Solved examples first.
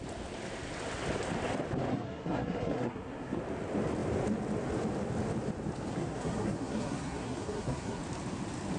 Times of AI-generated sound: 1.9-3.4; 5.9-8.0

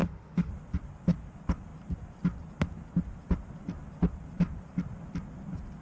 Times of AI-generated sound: 0.0-0.5

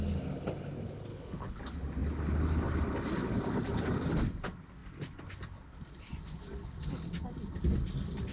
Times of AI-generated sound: 1.1-1.6

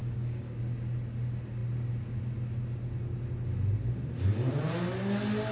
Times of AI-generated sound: 0.0-0.6

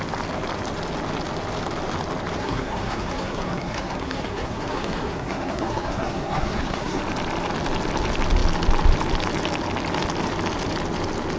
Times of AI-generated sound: 2.4-7.0